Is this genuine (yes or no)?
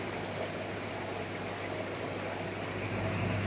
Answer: yes